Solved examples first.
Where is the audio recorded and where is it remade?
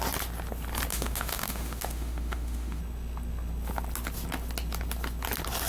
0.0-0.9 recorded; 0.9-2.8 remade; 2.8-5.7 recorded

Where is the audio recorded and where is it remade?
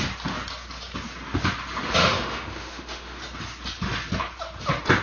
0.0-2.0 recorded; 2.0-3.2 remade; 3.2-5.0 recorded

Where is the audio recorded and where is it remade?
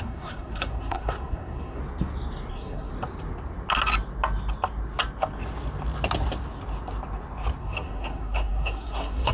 0.0-1.8 remade; 1.8-2.5 recorded; 2.5-2.9 remade; 2.9-7.6 recorded; 7.6-9.3 remade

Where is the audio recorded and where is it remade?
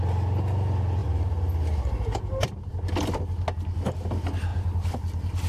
0.0-1.0 recorded; 1.0-2.7 remade; 2.7-4.5 recorded; 4.5-5.5 remade